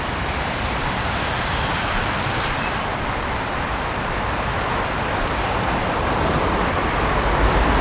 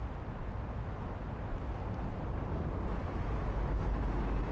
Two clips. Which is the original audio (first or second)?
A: second